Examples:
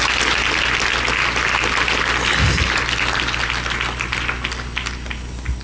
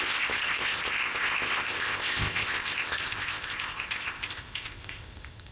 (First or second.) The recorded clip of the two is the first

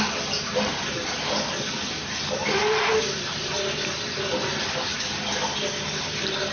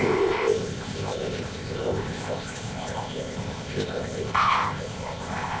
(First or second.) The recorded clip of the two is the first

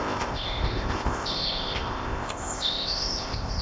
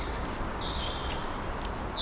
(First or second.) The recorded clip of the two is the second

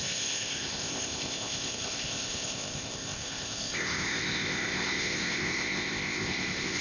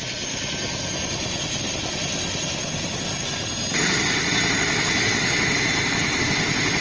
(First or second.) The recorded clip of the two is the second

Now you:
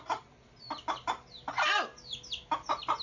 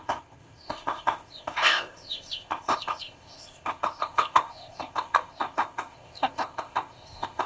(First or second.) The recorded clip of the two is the first